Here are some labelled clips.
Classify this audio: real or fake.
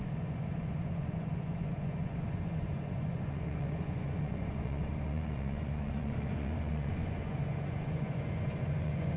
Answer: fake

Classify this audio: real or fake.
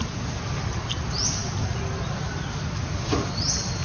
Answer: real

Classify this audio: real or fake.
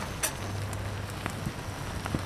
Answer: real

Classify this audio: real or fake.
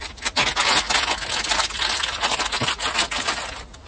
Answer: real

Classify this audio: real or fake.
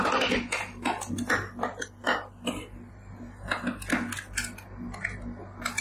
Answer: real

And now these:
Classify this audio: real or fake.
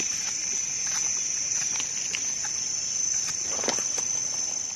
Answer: real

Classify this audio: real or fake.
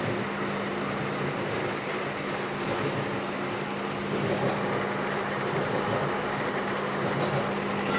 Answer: real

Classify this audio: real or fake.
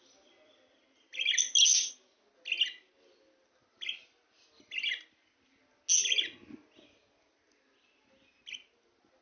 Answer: real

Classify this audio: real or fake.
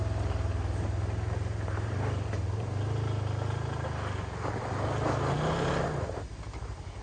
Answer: real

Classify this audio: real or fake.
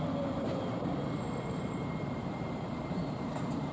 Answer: fake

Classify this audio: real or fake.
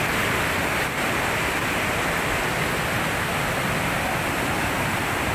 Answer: real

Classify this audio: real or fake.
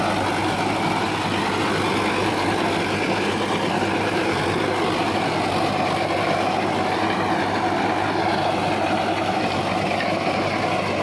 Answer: real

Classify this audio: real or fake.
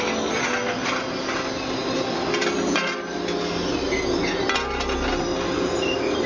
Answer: real